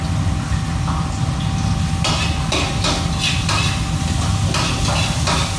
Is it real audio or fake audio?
real